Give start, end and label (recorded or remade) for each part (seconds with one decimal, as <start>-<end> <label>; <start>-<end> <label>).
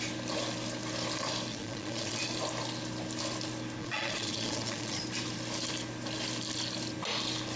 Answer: 0.0-1.5 recorded; 1.5-2.2 remade; 2.2-3.8 recorded; 3.8-5.0 remade; 5.0-7.6 recorded